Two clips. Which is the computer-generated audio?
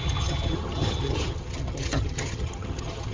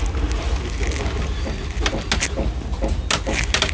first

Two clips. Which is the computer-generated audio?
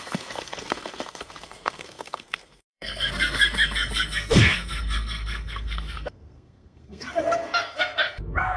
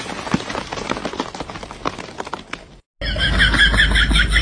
first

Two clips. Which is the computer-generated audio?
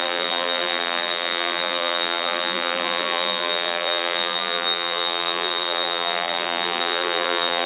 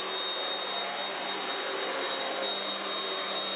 first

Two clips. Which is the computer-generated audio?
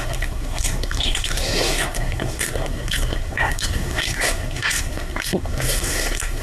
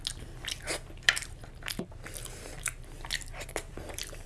first